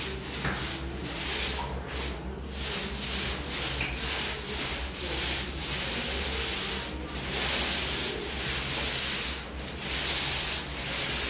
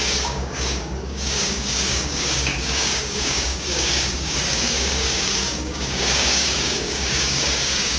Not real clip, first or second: second